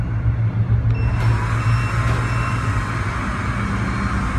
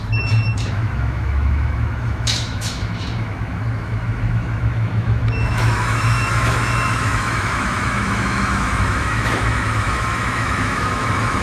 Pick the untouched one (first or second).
first